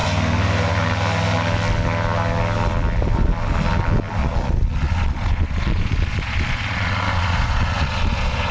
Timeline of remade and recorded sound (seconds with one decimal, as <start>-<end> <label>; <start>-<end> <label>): 0.0-4.2 recorded; 4.2-8.5 remade